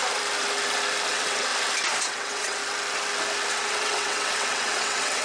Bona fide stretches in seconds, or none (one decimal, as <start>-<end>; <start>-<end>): 0.0-1.1; 1.5-2.1; 2.6-3.7